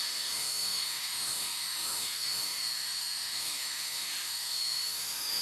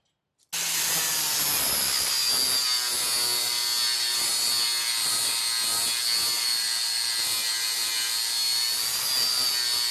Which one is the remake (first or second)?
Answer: first